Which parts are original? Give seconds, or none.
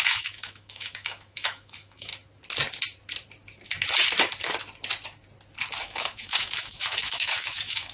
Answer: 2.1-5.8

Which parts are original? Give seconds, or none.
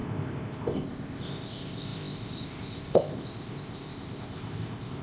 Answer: none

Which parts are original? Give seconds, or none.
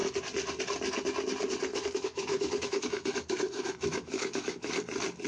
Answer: 0.0-1.7; 4.7-5.3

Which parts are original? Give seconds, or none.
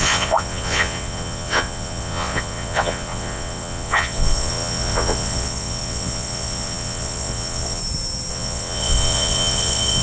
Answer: 7.8-8.3